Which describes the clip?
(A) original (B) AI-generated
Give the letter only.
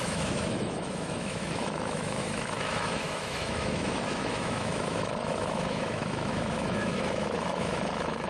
B